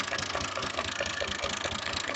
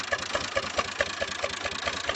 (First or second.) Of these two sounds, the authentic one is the second